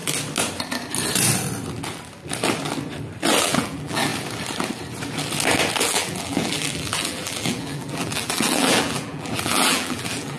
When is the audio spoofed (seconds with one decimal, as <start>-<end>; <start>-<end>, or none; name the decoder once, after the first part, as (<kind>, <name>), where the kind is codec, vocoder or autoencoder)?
3.4-4.1 (vocoder, BigVGAN v2); 5.8-10.4

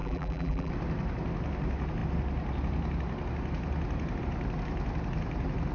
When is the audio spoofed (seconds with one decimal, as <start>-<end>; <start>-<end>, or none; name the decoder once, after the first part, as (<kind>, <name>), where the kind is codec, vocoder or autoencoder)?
0.0-0.7 (vocoder, BigVGAN v2)

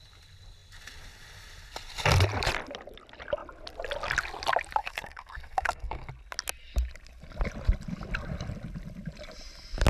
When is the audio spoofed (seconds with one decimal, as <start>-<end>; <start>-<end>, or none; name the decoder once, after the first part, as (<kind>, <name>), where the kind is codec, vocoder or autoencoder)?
4.8-6.1 (codec, SNAC)